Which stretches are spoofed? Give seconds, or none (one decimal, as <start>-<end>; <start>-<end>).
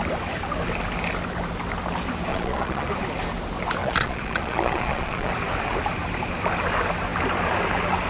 2.3-2.9; 3.8-5.3